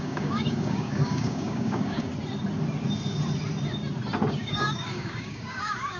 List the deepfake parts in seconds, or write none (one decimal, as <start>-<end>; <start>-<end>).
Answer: 0.0-2.1; 4.3-6.0